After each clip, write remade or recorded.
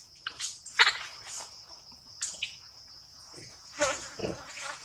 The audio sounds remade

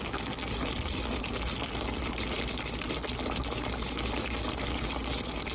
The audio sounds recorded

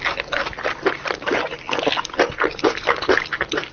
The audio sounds recorded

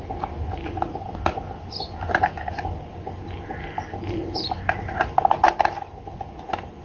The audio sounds recorded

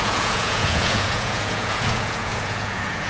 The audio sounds remade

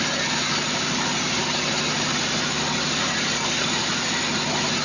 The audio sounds recorded